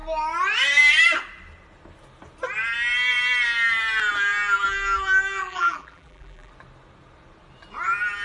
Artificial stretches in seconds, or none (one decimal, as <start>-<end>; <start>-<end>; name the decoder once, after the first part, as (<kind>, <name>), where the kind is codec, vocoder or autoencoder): 5.4-6.5 (vocoder, BigVGAN v2)